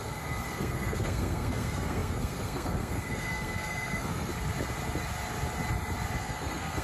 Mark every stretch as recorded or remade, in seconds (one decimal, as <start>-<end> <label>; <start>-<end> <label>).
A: 0.0-4.3 remade; 4.3-6.2 recorded; 6.2-6.8 remade